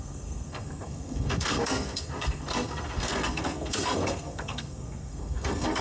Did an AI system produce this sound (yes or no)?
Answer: yes